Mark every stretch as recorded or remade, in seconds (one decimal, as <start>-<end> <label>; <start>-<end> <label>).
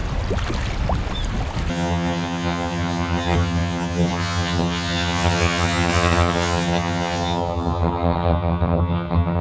0.0-1.7 recorded; 1.7-9.4 remade